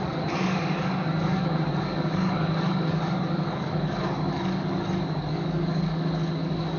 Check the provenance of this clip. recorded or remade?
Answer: remade